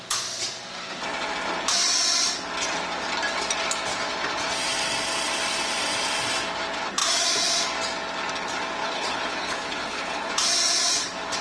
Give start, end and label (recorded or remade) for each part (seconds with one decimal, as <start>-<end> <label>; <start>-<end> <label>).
0.0-8.8 recorded; 8.8-10.3 remade; 10.3-11.4 recorded